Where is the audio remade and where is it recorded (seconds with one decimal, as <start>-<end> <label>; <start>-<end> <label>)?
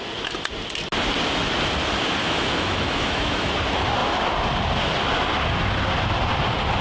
0.0-2.2 recorded; 2.2-3.5 remade; 3.5-6.8 recorded